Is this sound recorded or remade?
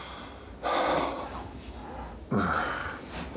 recorded